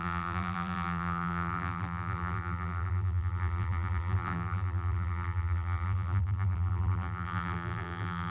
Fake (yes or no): yes